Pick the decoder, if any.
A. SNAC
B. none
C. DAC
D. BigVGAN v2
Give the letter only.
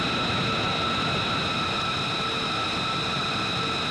B